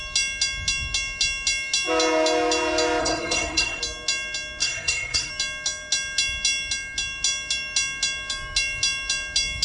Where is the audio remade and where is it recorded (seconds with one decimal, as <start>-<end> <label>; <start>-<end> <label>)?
0.0-3.0 recorded; 3.0-3.8 remade; 3.8-4.6 recorded; 4.6-5.3 remade; 5.3-9.6 recorded